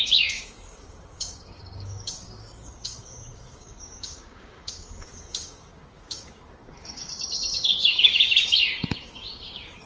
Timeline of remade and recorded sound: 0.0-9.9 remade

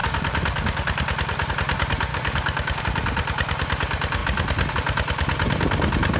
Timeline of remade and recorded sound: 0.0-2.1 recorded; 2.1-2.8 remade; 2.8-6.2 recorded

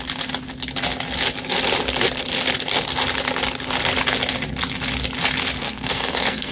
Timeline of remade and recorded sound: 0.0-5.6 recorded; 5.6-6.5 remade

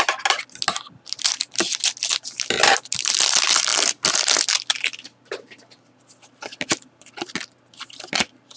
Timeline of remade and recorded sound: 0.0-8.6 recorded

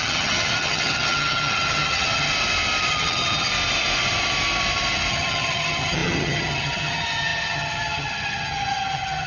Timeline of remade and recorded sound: 0.0-2.3 remade; 2.3-2.9 recorded; 2.9-3.5 remade; 3.5-5.1 recorded; 5.1-9.3 remade

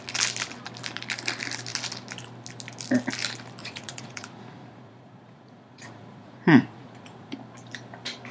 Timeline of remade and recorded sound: 0.0-3.6 recorded; 3.6-7.3 remade; 7.3-8.3 recorded

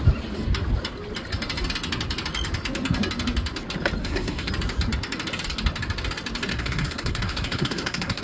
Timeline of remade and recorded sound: 0.0-4.0 recorded; 4.0-4.5 remade; 4.5-6.5 recorded; 6.5-8.2 remade